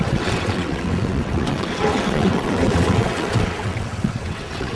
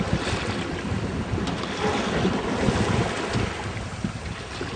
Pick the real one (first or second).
second